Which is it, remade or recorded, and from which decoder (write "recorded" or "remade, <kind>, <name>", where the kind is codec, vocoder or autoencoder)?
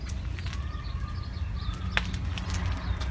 recorded